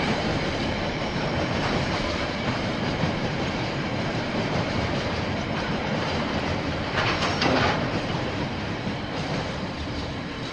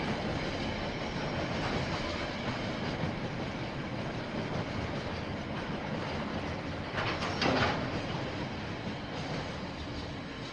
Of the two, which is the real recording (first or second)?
second